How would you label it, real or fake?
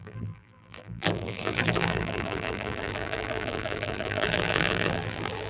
fake